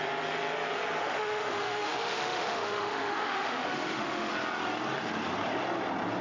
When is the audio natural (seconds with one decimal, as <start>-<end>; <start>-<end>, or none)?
0.0-1.0; 4.3-6.2